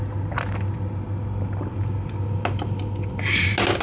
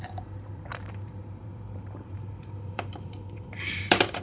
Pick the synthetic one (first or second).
second